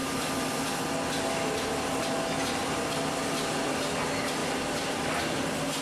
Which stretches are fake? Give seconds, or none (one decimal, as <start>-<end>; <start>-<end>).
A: 2.6-3.3; 4.4-5.0